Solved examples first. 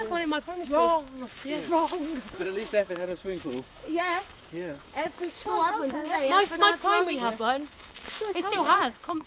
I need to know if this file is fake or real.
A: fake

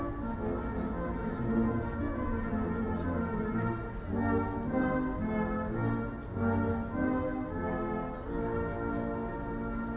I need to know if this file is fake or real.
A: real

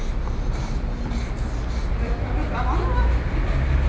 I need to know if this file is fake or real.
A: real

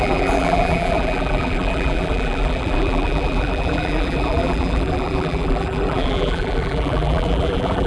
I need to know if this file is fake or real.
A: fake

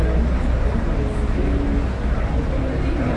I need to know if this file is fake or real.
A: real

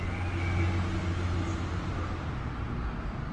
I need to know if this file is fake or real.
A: real